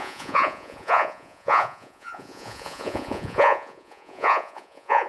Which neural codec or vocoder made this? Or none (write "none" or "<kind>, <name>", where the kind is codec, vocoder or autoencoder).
vocoder, Vocos